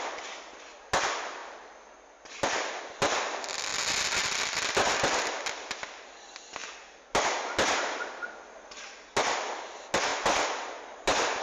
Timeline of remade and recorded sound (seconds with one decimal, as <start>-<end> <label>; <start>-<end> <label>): 0.0-11.4 recorded

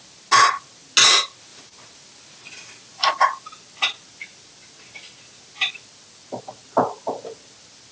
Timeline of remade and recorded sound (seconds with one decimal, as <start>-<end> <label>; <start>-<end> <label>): 0.0-7.9 recorded

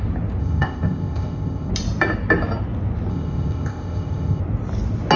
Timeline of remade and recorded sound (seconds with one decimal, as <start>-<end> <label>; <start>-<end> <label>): 0.0-0.4 recorded; 0.4-1.7 remade; 1.7-3.1 recorded; 3.1-4.4 remade; 4.4-5.2 recorded

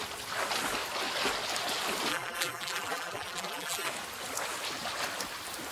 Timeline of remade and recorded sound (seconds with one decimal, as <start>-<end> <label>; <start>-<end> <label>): 0.0-2.1 recorded; 2.1-3.9 remade; 3.9-5.7 recorded